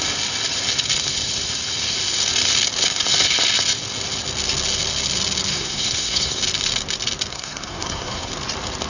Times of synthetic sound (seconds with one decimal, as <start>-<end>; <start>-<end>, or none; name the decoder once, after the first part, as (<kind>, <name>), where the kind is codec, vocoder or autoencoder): 5.5-6.4 (codec, SNAC); 7.3-8.3

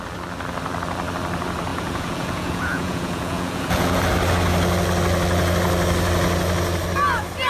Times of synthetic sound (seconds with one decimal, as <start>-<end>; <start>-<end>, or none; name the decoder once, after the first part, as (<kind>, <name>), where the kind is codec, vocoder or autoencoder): 1.7-4.0 (vocoder, Vocos)

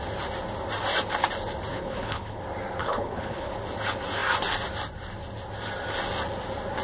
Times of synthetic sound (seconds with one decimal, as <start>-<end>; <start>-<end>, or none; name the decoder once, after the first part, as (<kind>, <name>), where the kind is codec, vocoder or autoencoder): 1.7-2.4 (codec, HILCodec); 2.8-3.5

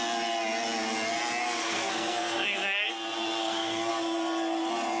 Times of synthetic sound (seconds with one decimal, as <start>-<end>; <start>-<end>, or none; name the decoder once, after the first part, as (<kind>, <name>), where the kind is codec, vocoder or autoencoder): 1.4-2.9 (codec, SNAC); 3.4-3.9